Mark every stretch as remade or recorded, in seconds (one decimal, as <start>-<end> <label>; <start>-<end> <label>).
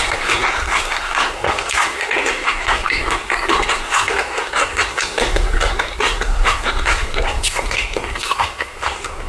0.0-9.3 remade